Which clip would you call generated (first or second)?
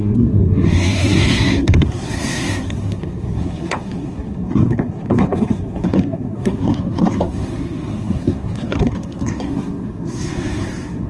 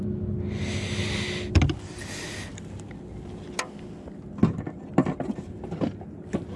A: first